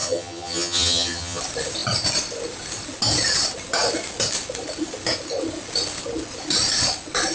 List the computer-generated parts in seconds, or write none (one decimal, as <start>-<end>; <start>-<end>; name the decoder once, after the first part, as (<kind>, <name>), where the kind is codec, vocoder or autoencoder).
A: 0.0-1.4 (vocoder, HiFi-GAN)